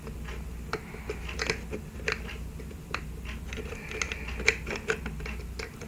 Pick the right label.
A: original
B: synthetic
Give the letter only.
A